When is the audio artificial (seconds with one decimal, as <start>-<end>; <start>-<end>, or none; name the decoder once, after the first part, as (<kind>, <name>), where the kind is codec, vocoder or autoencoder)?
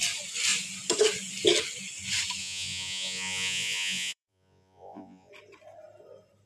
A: 2.4-5.3 (vocoder, Vocos)